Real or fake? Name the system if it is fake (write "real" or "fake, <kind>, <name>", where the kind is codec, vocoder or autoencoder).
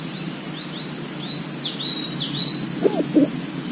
real